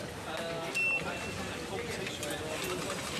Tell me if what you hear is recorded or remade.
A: recorded